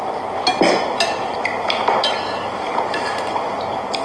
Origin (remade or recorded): recorded